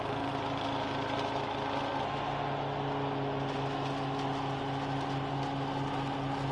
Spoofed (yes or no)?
no